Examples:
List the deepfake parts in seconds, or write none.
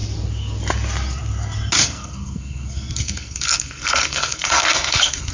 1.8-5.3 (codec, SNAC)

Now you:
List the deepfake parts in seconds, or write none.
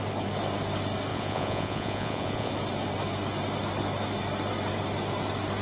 1.1-2.5 (vocoder, Vocos)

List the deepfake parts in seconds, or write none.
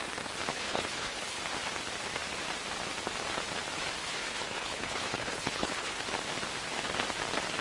0.5-1.4 (codec, HILCodec); 4.0-6.0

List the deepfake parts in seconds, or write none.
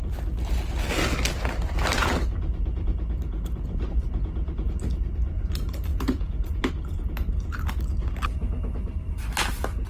5.9-6.7 (vocoder, Vocos)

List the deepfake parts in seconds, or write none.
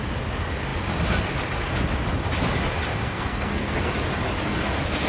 2.9-3.9 (codec, SNAC)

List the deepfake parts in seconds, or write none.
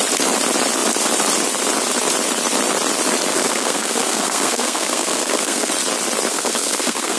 3.3-5.7 (codec, SNAC); 6.3-7.2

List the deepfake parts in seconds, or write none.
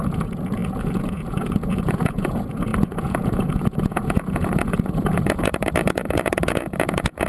0.0-7.3 (vocoder, Vocos)